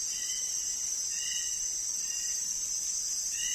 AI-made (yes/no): yes